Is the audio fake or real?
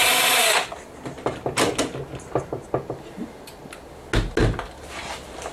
real